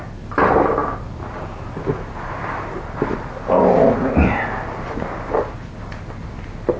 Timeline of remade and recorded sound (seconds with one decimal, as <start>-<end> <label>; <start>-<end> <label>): 0.0-6.8 recorded